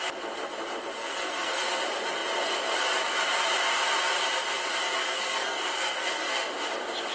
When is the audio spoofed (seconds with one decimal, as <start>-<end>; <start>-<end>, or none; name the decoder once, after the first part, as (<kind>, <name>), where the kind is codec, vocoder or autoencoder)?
1.0-1.8 (codec, SNAC); 5.0-6.5

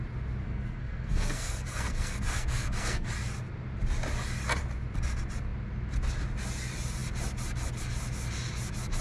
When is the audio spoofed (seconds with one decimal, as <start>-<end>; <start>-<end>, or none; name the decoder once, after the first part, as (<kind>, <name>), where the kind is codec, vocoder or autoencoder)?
0.4-3.1 (codec, SNAC)